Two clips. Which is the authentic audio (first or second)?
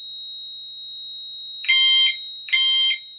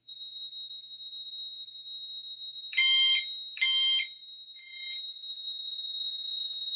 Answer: first